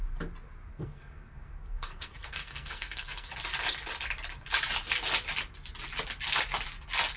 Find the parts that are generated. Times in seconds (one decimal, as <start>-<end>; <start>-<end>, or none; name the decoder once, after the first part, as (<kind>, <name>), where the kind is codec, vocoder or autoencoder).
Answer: 0.7-3.3 (codec, SNAC)